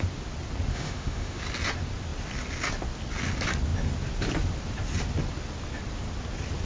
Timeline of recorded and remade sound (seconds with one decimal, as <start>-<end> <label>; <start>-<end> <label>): 0.0-0.7 recorded; 0.7-1.4 remade; 1.4-6.7 recorded